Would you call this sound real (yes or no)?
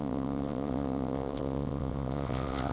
no